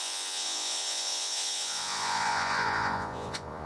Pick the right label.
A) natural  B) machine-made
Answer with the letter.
B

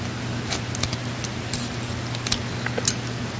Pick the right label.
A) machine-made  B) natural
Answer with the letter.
B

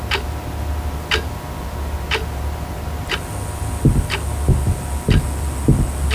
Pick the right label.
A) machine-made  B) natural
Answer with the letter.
B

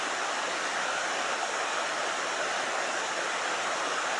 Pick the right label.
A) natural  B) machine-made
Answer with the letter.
A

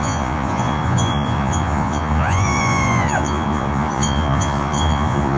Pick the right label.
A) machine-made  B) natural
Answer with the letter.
A